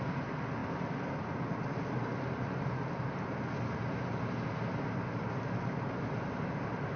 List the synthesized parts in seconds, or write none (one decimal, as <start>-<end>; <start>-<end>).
none